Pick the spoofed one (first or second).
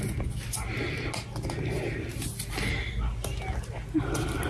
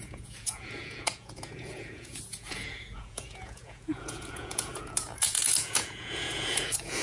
second